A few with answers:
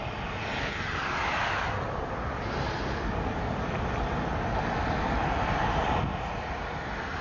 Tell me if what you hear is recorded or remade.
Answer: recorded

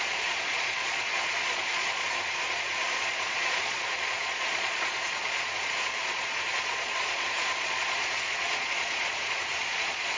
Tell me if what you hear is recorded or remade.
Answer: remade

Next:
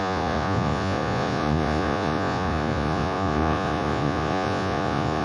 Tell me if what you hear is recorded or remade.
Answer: remade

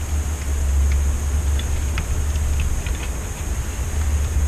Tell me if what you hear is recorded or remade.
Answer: recorded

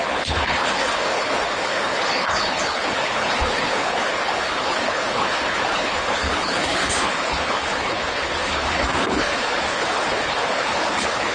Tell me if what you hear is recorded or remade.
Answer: remade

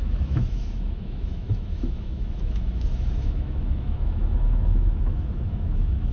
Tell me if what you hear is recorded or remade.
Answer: remade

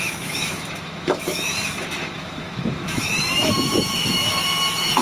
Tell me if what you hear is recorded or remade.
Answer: remade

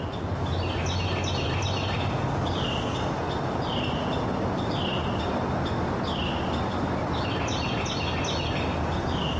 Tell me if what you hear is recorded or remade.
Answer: recorded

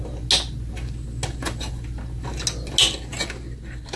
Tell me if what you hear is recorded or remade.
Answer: recorded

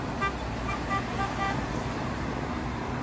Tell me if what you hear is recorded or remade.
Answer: recorded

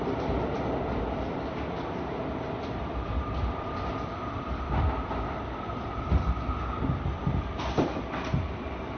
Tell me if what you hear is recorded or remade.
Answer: remade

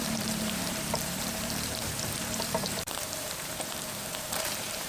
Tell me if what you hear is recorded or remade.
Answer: remade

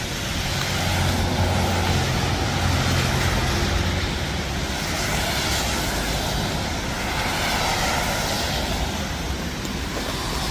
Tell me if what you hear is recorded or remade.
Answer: recorded